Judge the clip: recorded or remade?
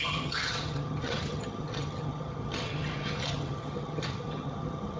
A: remade